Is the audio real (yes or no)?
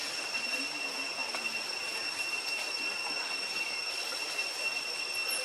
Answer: yes